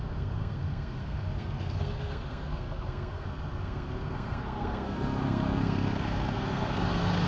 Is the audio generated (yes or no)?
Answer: yes